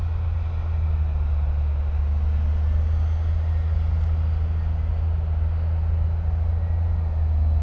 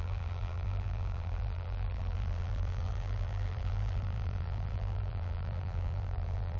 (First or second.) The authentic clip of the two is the first